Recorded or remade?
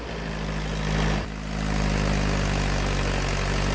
recorded